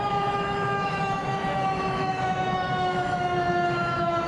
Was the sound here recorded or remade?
remade